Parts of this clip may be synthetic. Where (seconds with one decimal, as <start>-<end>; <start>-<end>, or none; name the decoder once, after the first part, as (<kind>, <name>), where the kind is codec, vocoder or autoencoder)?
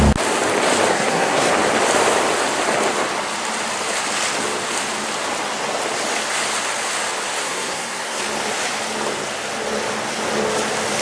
0.9-1.5 (codec, SNAC); 7.4-8.2